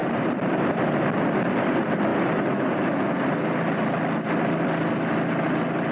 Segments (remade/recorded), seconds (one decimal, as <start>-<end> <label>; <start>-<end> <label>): 0.0-0.8 remade; 0.8-5.9 recorded